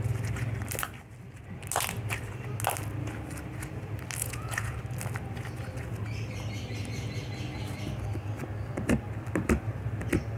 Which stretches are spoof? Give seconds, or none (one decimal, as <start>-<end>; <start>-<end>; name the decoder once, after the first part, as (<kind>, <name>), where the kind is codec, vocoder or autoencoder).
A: 4.2-4.8 (vocoder, Vocos)